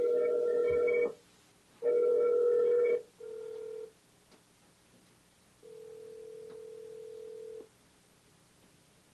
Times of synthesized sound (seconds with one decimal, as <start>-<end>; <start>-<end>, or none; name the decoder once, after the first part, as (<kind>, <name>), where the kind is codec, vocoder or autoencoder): 2.1-2.9 (codec, SNAC)